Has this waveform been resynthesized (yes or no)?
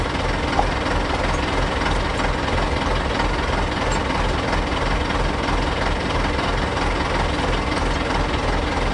no